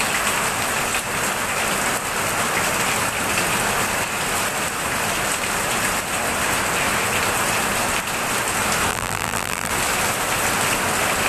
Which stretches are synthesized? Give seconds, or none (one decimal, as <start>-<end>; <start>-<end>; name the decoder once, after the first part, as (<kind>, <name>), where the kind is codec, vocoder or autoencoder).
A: 8.9-9.7 (vocoder, BigVGAN v2)